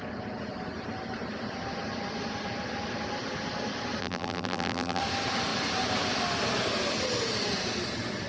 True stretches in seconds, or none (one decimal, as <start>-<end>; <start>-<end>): 0.0-4.0; 5.0-8.3